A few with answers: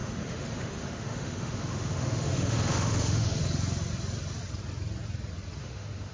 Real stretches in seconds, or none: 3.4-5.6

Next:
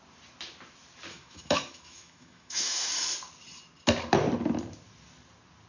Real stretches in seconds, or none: 0.0-1.1; 2.9-5.7

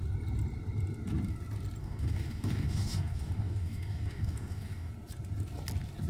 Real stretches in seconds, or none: 0.0-1.8; 4.9-6.1

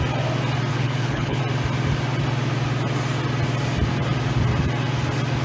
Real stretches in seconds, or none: 0.0-0.7; 1.4-5.4